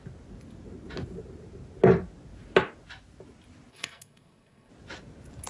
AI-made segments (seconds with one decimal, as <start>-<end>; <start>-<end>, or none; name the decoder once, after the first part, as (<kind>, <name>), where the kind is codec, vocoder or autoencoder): 3.7-4.7 (codec, SNAC)